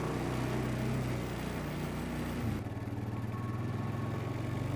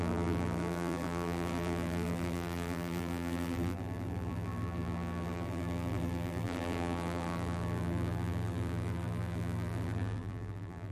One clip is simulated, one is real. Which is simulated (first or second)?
second